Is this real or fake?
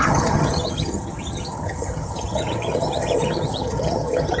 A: fake